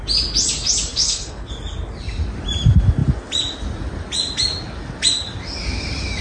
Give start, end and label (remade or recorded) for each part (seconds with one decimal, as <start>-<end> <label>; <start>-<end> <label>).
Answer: 0.0-0.9 recorded; 0.9-1.5 remade; 1.5-6.2 recorded